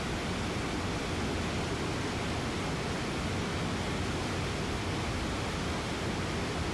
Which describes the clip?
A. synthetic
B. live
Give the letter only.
B